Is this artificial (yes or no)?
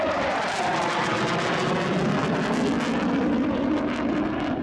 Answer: no